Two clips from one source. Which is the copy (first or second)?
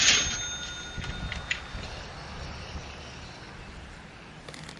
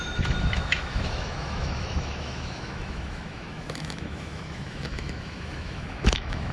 second